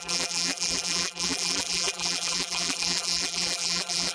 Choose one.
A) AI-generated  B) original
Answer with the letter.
A